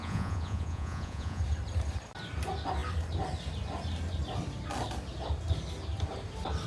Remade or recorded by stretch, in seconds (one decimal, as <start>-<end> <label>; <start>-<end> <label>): 0.0-1.4 remade; 1.4-6.7 recorded